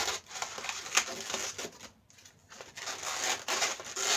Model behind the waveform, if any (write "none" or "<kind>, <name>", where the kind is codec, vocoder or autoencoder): none